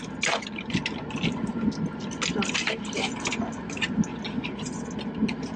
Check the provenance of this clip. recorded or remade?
recorded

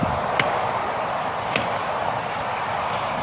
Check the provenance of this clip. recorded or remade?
recorded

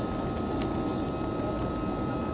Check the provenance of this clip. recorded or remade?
recorded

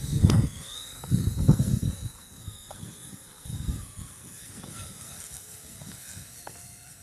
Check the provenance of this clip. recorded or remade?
remade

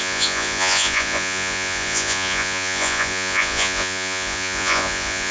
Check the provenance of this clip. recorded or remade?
remade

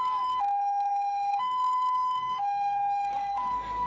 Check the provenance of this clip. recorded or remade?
remade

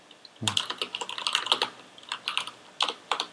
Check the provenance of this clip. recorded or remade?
recorded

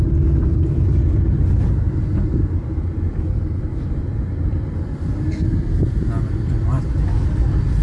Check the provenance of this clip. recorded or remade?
recorded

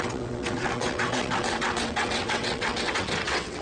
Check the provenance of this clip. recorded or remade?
remade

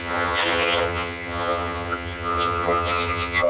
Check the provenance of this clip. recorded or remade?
remade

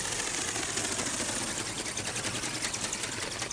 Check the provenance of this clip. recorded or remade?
recorded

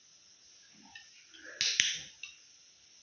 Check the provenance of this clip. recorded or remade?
recorded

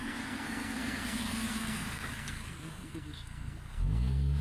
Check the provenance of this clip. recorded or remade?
remade